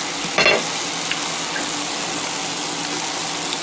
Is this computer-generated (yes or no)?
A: no